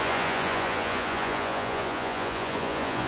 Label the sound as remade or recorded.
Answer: remade